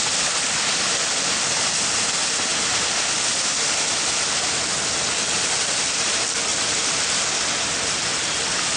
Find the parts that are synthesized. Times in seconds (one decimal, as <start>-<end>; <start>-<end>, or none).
none